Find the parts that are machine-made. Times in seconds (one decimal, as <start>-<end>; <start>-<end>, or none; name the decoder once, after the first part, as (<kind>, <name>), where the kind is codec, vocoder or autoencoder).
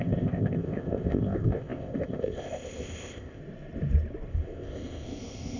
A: 0.0-3.4 (codec, ZipCodec); 4.3-5.6